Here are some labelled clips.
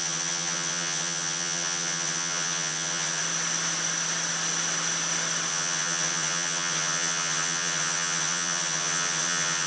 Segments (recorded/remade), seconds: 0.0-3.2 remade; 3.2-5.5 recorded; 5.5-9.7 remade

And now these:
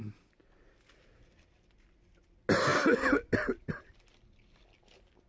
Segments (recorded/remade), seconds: 0.0-5.3 recorded

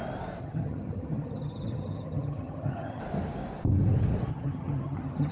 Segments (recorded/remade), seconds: 0.0-0.4 recorded; 0.4-3.0 remade; 3.0-4.3 recorded; 4.3-5.3 remade

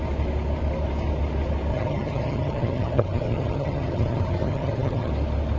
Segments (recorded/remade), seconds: 0.0-1.7 recorded; 1.7-5.1 remade; 5.1-5.6 recorded

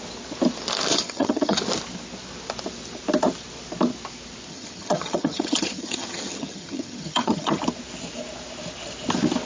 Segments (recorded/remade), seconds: 0.0-0.9 recorded; 0.9-1.6 remade; 1.6-4.5 recorded; 4.5-7.6 remade; 7.6-9.5 recorded

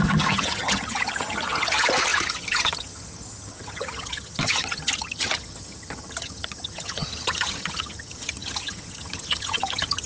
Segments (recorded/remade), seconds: 0.0-10.1 remade

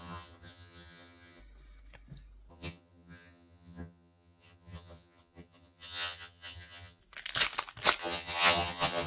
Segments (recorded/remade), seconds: 0.0-1.4 remade; 1.4-2.5 recorded; 2.5-7.0 remade; 7.0-8.0 recorded; 8.0-9.1 remade